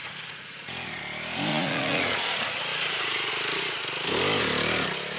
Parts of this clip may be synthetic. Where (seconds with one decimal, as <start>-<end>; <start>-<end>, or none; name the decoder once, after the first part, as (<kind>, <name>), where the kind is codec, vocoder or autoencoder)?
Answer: 0.0-1.0 (vocoder, Vocos); 1.5-2.2; 2.7-3.3

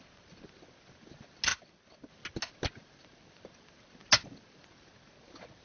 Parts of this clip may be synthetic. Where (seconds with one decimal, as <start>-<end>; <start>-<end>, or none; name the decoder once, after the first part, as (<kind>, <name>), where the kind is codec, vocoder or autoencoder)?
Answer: none